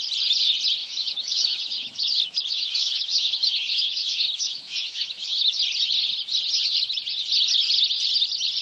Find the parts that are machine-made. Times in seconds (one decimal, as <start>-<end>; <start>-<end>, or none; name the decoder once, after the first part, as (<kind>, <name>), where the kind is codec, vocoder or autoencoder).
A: 0.8-5.6 (autoencoder, DAC-VAE)

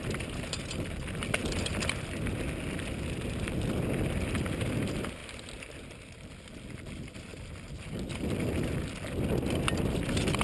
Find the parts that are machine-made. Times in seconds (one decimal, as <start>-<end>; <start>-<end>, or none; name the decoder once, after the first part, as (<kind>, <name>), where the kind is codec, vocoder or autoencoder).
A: none

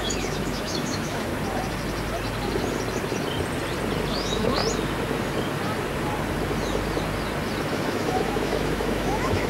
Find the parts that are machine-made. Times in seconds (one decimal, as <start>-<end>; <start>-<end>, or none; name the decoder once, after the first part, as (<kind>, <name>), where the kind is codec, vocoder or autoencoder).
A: 0.0-1.3 (autoencoder, DAC-VAE); 4.1-4.6; 7.7-9.5